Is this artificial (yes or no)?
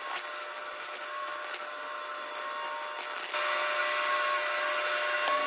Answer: no